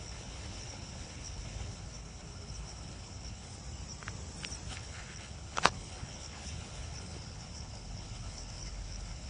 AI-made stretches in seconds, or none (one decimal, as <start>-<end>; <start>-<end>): 0.0-3.5; 4.7-9.3